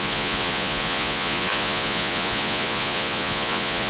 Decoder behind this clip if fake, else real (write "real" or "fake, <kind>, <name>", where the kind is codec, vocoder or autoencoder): fake, vocoder, Vocos